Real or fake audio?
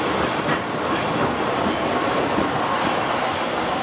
real